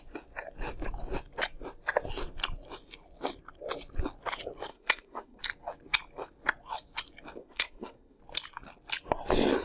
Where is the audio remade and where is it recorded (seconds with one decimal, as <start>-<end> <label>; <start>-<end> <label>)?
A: 0.0-4.7 recorded; 4.7-5.4 remade; 5.4-7.4 recorded; 7.4-8.2 remade; 8.2-9.6 recorded